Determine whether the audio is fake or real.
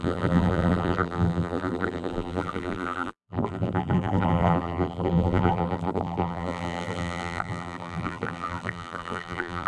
fake